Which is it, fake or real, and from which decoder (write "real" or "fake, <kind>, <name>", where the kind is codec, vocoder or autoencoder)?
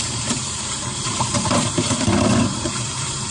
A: fake, vocoder, BigVGAN v2